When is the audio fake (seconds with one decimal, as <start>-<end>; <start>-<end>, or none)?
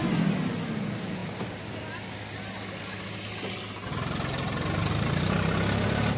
none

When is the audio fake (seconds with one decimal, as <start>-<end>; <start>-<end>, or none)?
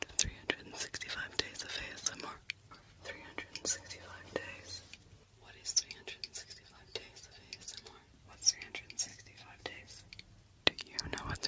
9.1-9.8